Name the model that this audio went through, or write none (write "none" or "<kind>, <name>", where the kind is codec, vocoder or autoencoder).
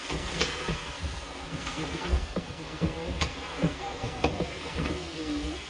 codec, SNAC